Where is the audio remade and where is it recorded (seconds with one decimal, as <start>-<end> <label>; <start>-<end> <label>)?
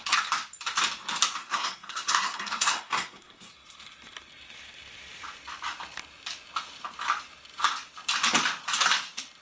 0.0-1.4 recorded; 1.4-3.5 remade; 3.5-9.4 recorded